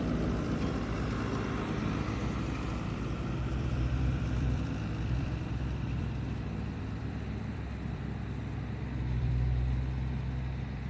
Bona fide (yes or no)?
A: no